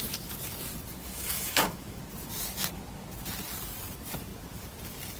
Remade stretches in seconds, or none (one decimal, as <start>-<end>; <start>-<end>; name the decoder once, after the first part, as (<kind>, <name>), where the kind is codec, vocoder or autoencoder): 1.0-2.0 (autoencoder, DAC-VAE)